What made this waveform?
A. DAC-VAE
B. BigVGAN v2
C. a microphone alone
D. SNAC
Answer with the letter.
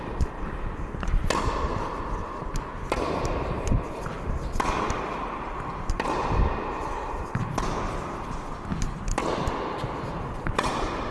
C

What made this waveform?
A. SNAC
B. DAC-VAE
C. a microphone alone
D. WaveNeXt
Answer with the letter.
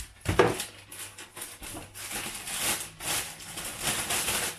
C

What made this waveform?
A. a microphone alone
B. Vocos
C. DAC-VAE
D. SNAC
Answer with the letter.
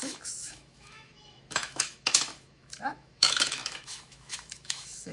C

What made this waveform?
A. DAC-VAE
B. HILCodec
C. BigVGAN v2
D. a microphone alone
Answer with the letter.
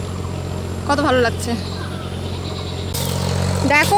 D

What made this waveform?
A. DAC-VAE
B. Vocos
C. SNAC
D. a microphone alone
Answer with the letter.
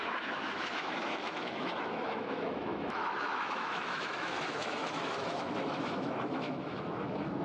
A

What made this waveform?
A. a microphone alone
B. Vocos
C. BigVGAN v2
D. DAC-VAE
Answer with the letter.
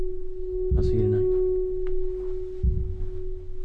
A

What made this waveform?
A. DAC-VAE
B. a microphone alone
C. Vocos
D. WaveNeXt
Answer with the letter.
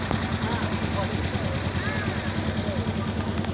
B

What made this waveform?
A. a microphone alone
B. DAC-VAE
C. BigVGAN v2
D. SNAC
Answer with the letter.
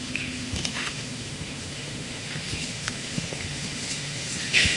B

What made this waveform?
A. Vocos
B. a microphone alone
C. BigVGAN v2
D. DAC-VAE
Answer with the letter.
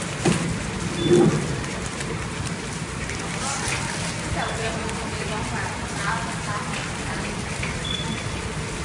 B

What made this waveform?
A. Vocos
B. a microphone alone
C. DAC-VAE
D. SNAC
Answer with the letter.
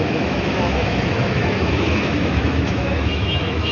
C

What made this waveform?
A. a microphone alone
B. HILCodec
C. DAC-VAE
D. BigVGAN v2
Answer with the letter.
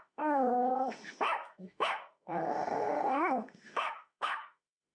C